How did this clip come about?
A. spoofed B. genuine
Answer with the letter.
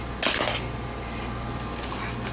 B